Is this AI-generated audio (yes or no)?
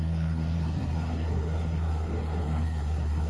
yes